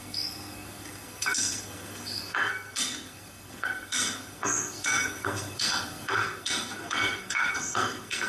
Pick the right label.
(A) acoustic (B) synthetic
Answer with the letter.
B